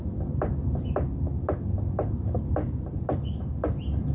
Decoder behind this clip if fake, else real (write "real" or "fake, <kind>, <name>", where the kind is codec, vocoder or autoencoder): real